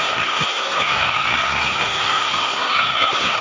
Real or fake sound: fake